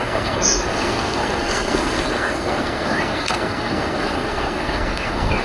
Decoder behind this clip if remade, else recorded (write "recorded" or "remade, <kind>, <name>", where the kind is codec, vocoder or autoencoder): remade, codec, SNAC